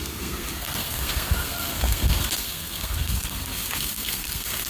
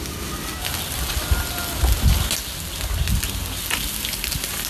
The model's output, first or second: first